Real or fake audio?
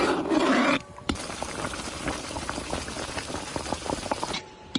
fake